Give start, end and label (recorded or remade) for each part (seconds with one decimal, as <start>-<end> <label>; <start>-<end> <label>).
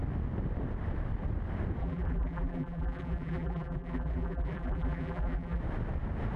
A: 0.0-1.8 recorded; 1.8-5.6 remade; 5.6-6.4 recorded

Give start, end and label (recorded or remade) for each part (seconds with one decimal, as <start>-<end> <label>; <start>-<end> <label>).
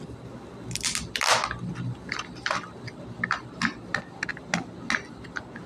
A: 0.0-4.3 remade; 4.3-5.3 recorded; 5.3-5.7 remade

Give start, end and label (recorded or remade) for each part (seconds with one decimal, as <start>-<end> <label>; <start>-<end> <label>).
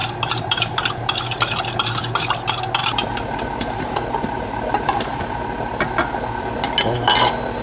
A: 0.0-1.4 remade; 1.4-2.8 recorded; 2.8-5.4 remade; 5.4-7.6 recorded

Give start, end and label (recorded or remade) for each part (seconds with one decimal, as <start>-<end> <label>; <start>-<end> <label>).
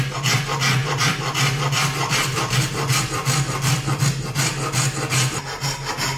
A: 0.0-0.8 recorded; 0.8-4.4 remade; 4.4-6.2 recorded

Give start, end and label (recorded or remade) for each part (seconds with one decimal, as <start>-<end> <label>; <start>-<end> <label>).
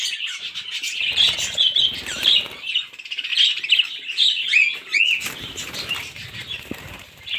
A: 0.0-3.3 remade; 3.3-5.3 recorded; 5.3-7.4 remade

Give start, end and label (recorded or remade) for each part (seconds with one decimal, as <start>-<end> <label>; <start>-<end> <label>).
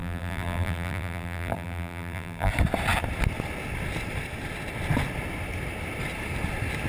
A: 0.0-2.5 remade; 2.5-6.9 recorded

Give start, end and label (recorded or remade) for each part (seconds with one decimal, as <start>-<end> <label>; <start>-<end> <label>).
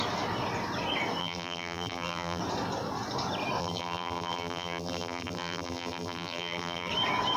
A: 0.0-1.2 recorded; 1.2-2.4 remade; 2.4-3.6 recorded; 3.6-6.9 remade; 6.9-7.4 recorded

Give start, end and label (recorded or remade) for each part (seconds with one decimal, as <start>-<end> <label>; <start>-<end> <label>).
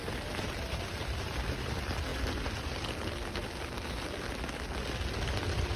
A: 0.0-1.4 remade; 1.4-5.8 recorded